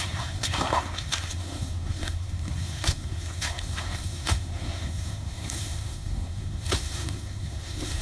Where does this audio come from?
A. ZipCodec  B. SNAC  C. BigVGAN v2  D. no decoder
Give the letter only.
B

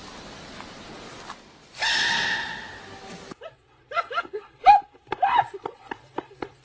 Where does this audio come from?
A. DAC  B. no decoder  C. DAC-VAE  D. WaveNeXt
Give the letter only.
B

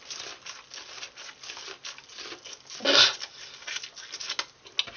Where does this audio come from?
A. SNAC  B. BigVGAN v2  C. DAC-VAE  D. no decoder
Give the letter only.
D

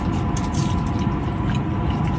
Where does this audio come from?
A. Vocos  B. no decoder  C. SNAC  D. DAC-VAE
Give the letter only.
B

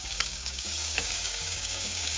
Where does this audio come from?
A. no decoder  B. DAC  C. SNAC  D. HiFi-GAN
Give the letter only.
B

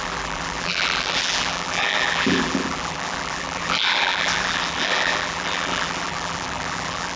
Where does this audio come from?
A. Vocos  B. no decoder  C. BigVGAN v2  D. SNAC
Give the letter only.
C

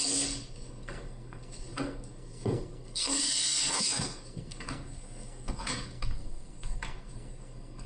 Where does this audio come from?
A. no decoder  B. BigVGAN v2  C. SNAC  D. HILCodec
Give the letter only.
C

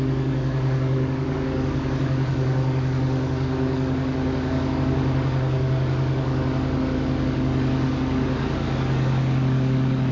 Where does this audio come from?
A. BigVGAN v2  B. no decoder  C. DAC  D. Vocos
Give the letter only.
C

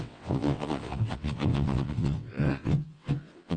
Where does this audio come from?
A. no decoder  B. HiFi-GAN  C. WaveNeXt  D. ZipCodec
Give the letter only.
C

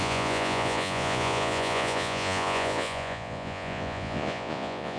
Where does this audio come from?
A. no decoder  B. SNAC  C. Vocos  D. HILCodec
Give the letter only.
C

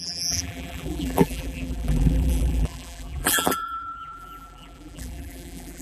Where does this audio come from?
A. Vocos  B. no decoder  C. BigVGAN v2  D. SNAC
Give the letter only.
C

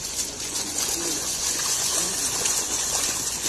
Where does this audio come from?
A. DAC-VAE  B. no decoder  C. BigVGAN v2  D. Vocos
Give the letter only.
D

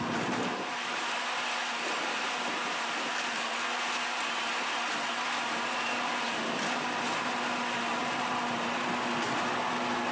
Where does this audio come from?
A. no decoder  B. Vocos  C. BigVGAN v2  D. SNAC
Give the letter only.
A